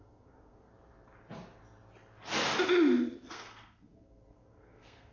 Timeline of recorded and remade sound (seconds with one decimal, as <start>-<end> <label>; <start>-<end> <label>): 0.0-0.7 remade; 0.7-3.3 recorded; 3.3-5.1 remade